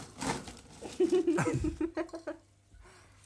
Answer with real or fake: real